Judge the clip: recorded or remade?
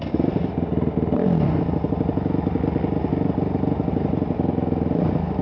recorded